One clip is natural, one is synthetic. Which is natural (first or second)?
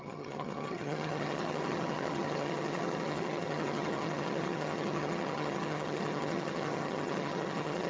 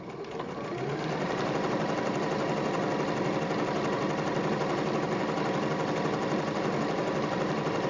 second